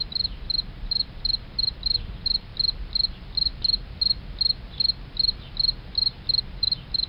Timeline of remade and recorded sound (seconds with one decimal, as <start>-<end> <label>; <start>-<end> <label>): 0.0-2.5 remade; 2.5-6.4 recorded; 6.4-7.1 remade